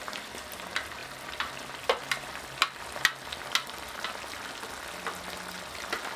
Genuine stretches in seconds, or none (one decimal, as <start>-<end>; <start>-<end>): 0.0-6.2